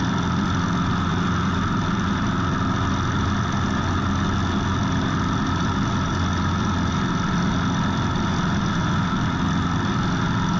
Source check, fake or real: real